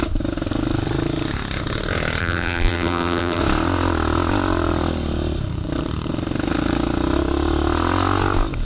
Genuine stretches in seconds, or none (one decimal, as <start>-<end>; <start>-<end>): 0.0-2.2; 3.4-8.6